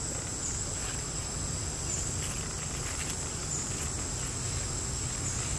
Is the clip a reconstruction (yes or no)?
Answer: no